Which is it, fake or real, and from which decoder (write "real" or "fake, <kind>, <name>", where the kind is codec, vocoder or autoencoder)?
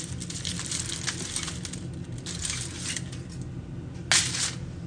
real